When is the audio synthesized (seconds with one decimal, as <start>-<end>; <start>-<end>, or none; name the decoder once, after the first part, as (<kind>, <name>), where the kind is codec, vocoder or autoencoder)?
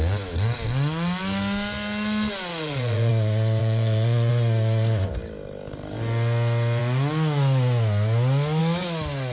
2.5-3.1 (vocoder, Vocos); 3.6-4.3